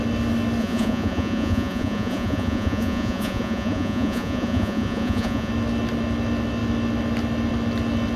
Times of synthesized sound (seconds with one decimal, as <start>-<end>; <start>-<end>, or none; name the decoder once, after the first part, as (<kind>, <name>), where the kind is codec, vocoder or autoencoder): 0.6-5.5 (vocoder, Vocos)